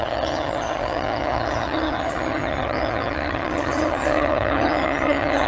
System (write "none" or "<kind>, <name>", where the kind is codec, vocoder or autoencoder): vocoder, HiFi-GAN